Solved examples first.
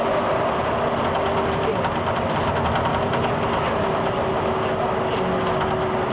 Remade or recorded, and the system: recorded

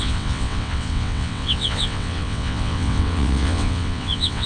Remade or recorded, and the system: remade, vocoder, WaveNeXt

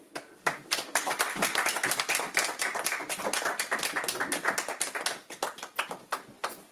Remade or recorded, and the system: recorded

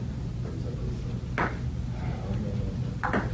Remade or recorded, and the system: recorded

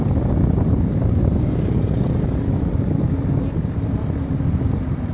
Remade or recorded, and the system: recorded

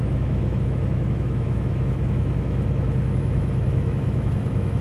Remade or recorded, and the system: remade, autoencoder, DAC-VAE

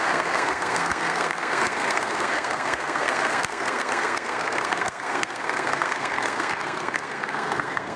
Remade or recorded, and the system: remade, codec, SNAC